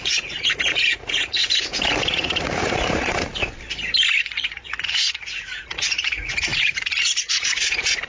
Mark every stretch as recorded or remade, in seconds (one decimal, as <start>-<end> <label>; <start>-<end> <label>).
0.0-1.4 remade; 1.4-2.0 recorded; 2.0-3.3 remade; 3.3-4.2 recorded; 4.2-8.1 remade